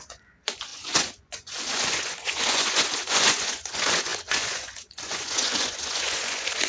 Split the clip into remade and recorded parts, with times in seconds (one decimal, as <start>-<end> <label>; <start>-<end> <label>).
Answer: 0.0-6.7 remade

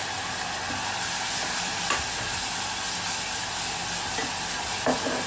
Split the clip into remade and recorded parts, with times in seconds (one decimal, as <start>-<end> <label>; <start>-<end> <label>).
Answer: 0.0-5.3 recorded

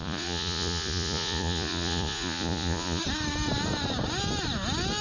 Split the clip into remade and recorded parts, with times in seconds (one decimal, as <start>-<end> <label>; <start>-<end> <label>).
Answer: 0.0-3.0 remade; 3.0-5.0 recorded

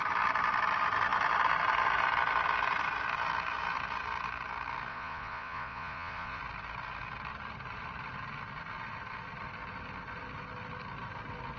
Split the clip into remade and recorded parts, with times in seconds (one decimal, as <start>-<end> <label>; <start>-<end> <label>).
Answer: 0.0-4.9 recorded; 4.9-6.4 remade; 6.4-11.6 recorded

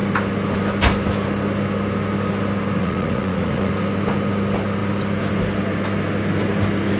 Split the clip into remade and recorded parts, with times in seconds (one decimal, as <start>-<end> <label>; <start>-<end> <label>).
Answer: 0.0-2.8 recorded; 2.8-3.7 remade; 3.7-7.0 recorded